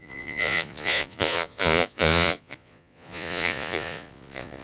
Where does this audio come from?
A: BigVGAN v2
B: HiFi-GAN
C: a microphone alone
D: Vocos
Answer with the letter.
D